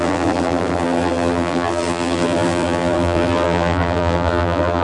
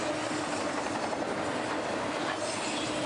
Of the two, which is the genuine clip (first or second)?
second